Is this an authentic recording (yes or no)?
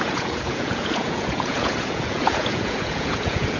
no